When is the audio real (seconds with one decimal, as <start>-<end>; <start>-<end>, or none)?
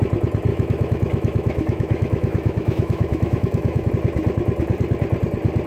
0.0-0.5; 3.9-5.7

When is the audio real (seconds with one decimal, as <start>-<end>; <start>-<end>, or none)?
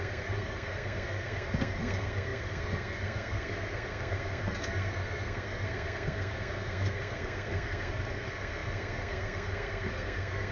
none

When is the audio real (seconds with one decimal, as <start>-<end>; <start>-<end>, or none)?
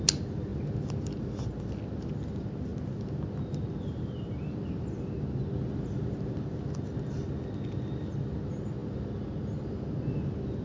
0.0-10.6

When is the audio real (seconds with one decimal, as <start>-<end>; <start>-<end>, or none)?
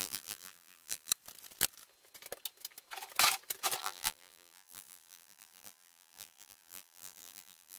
1.1-3.8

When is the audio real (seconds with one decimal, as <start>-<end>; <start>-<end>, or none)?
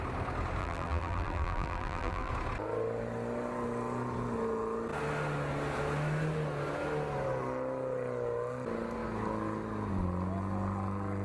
0.0-0.6; 2.3-11.2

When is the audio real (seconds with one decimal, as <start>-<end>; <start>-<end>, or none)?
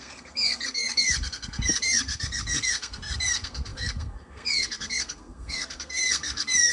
none